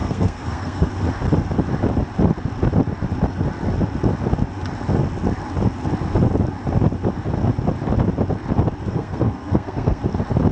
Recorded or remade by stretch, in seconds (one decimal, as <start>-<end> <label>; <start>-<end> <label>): 0.0-0.9 remade; 0.9-8.9 recorded; 8.9-10.0 remade; 10.0-10.5 recorded